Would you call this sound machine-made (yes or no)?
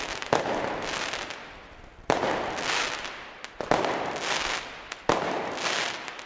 no